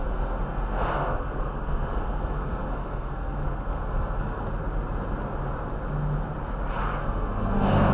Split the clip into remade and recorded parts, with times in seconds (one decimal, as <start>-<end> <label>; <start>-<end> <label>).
0.0-4.4 remade; 4.4-7.0 recorded; 7.0-7.9 remade